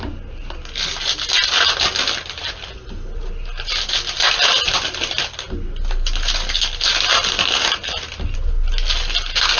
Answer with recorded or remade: recorded